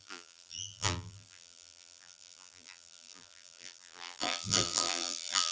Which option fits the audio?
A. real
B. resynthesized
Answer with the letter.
B